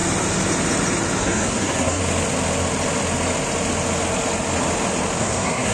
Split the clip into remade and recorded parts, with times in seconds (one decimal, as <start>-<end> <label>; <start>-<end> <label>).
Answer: 0.0-1.2 recorded; 1.2-2.0 remade; 2.0-5.2 recorded; 5.2-5.7 remade

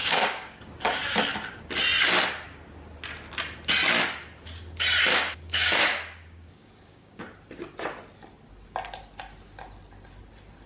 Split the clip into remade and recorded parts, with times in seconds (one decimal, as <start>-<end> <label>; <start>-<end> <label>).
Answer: 0.0-0.7 remade; 0.7-5.1 recorded; 5.1-7.2 remade; 7.2-10.7 recorded

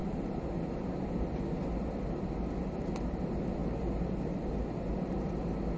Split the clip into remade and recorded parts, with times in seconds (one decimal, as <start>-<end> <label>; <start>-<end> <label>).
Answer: 0.0-5.8 recorded

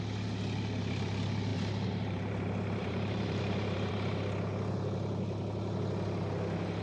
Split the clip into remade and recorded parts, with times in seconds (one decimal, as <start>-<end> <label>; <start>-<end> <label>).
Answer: 0.0-1.5 recorded; 1.5-3.9 remade; 3.9-6.8 recorded

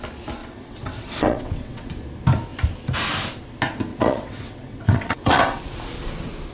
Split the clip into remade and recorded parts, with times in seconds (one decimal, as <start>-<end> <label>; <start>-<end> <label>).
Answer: 0.0-0.4 recorded; 0.4-1.9 remade; 1.9-3.9 recorded; 3.9-5.6 remade; 5.6-6.5 recorded